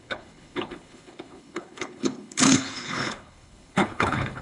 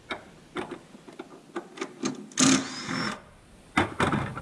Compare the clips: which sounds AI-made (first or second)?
first